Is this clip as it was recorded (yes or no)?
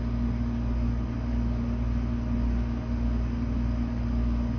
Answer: yes